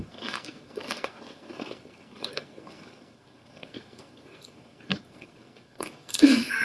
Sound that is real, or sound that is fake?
fake